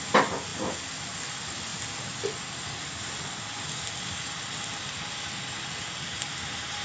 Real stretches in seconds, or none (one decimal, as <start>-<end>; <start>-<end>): 0.0-6.8